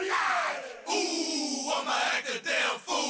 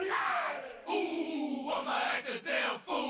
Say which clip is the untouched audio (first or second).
first